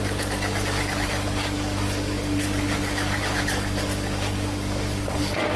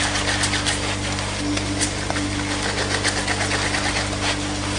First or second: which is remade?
first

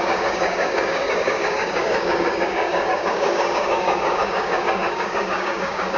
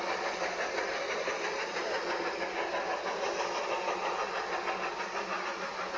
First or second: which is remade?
first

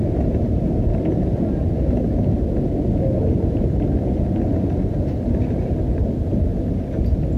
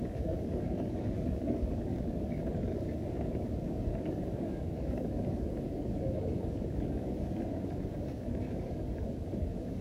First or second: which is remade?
second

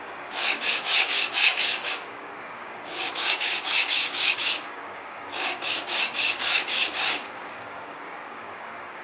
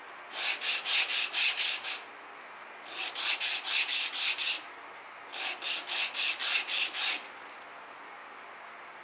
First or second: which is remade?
first